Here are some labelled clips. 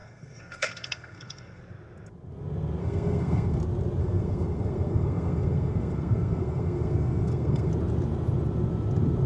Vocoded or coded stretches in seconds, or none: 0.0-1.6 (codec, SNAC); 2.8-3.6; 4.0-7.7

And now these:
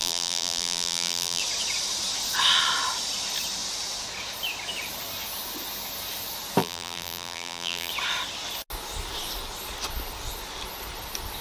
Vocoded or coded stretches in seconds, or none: 0.0-1.4 (vocoder, BigVGAN v2); 6.6-7.9

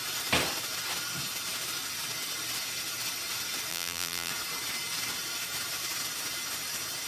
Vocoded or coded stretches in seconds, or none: 3.7-4.3 (vocoder, BigVGAN v2)

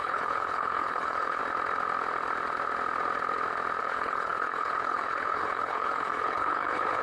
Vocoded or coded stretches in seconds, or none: 0.0-1.4 (codec, HILCodec); 3.8-7.0

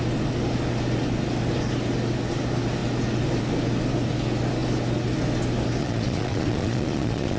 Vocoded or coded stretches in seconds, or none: 5.8-7.4 (vocoder, Vocos)

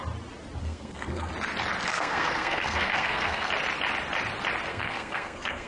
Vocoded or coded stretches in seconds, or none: 0.6-1.3 (codec, SNAC); 1.9-3.5; 4.7-5.7